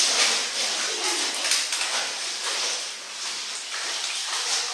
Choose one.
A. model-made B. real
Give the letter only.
B